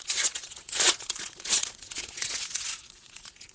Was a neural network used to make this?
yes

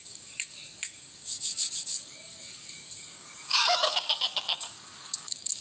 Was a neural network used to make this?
yes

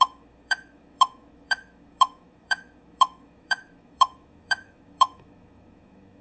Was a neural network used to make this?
yes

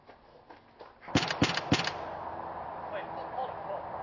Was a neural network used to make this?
no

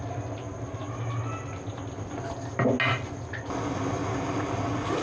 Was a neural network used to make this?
no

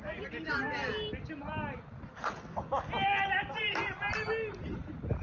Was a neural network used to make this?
no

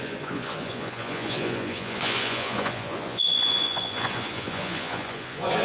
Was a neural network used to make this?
yes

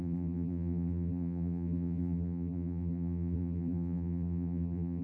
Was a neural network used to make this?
yes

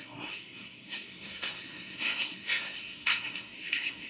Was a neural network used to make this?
yes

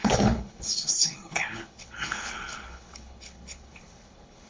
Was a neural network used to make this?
yes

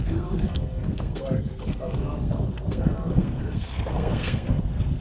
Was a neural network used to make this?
yes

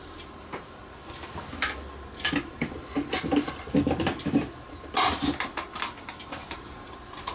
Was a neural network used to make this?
no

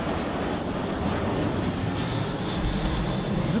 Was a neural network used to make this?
no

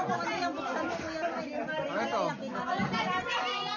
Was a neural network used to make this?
no